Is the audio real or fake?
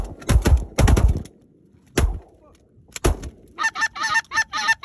real